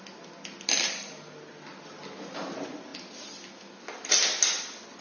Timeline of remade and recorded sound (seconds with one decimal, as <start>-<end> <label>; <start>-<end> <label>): 0.0-5.0 recorded